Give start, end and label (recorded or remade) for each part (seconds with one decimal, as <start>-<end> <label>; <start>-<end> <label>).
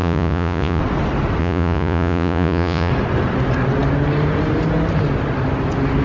0.0-0.8 remade; 0.8-1.4 recorded; 1.4-2.9 remade; 2.9-6.0 recorded